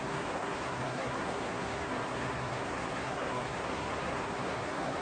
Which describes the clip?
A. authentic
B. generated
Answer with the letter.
B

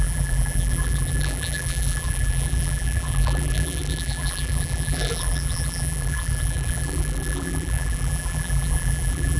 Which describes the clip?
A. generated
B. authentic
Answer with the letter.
A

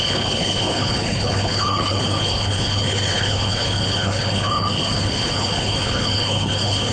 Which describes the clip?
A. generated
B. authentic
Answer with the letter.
A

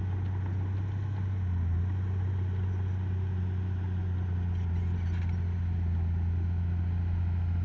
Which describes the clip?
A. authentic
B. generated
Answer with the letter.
A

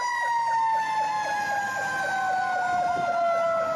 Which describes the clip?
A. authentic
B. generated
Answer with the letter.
A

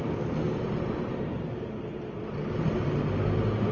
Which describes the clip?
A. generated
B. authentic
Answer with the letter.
B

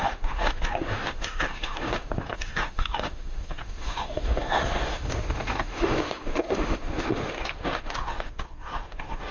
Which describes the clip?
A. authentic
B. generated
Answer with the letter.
B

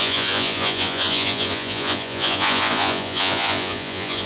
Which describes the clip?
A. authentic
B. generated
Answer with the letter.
B